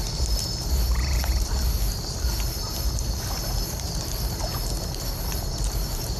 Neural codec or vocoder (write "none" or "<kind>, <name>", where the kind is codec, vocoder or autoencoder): vocoder, BigVGAN v2